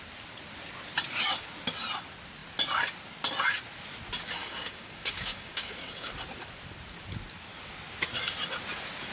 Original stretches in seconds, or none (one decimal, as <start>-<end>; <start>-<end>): 0.0-4.4; 6.1-9.1